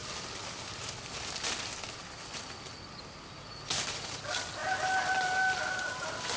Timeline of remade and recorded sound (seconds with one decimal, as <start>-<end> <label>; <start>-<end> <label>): 0.0-6.4 recorded